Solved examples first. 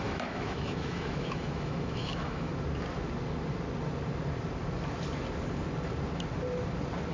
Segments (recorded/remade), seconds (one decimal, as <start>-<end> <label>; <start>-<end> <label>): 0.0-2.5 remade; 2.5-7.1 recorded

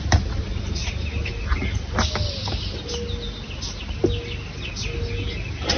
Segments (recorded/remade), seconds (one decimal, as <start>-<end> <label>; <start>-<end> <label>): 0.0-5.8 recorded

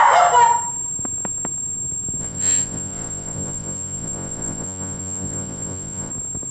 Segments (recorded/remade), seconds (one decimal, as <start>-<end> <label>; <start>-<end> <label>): 0.0-2.2 recorded; 2.2-6.1 remade; 6.1-6.5 recorded

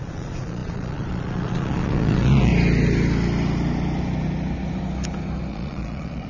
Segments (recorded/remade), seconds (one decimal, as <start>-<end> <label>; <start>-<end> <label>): 0.0-2.5 remade; 2.5-5.5 recorded; 5.5-6.3 remade

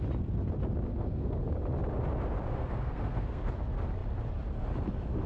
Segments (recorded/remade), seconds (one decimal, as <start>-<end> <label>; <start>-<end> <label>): 0.0-0.9 recorded; 0.9-1.4 remade; 1.4-2.5 recorded; 2.5-3.5 remade; 3.5-5.3 recorded

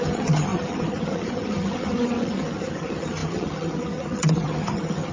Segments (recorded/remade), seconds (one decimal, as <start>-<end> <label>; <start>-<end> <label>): 0.0-5.1 remade